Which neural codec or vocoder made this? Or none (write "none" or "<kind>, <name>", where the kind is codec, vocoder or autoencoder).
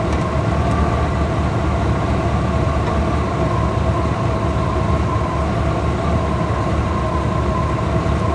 none